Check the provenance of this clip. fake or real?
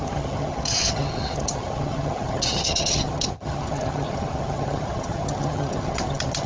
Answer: fake